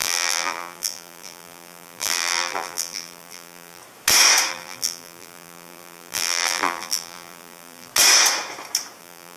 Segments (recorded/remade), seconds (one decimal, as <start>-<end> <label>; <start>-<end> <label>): 0.0-3.8 remade; 3.8-4.5 recorded; 4.5-7.9 remade; 7.9-9.0 recorded; 9.0-9.4 remade